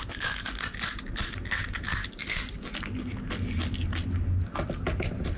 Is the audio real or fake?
real